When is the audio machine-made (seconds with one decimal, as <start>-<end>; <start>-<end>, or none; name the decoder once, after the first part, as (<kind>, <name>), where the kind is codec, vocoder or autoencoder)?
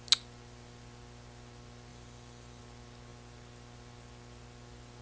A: 1.9-2.6 (vocoder, BigVGAN v2)